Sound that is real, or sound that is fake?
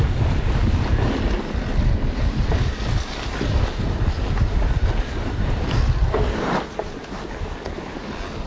real